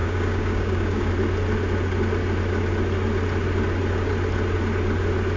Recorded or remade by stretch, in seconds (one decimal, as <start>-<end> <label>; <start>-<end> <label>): 0.0-1.1 remade; 1.1-5.4 recorded

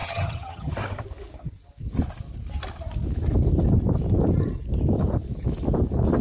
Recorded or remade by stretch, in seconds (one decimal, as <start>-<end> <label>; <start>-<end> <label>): 0.0-0.7 remade; 0.7-6.2 recorded

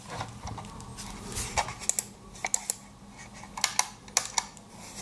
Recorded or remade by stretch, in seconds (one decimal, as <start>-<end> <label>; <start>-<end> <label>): 0.0-5.0 recorded